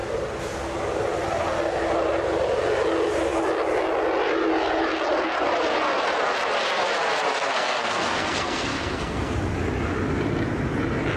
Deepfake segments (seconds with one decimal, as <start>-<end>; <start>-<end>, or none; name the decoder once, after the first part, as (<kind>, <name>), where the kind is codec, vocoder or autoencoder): 7.3-9.3 (codec, SNAC)